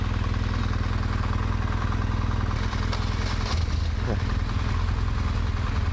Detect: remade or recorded recorded